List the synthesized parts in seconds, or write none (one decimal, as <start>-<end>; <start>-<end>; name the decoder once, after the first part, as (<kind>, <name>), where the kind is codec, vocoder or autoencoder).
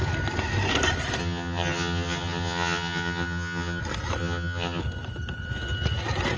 1.2-3.8 (vocoder, HiFi-GAN); 4.2-4.8